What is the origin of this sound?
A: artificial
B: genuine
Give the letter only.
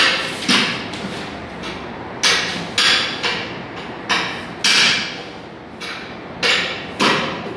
B